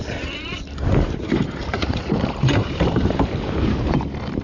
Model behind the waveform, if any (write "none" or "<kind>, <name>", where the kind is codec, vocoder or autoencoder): vocoder, BigVGAN v2